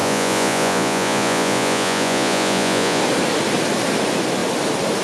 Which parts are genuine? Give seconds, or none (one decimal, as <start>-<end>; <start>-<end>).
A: 3.0-5.0